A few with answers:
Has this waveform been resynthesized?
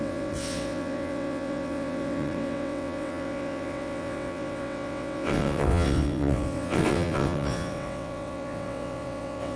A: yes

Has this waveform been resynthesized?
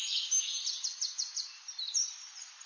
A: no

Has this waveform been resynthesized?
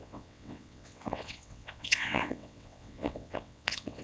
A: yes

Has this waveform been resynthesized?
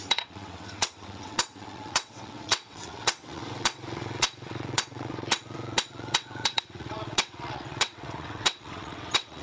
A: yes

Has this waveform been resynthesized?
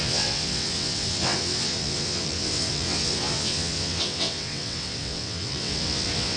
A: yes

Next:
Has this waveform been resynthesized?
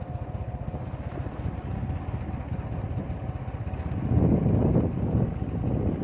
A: no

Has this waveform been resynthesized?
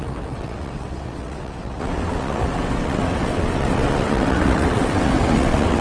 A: yes